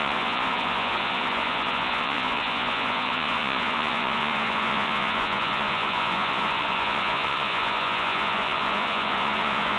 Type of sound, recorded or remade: remade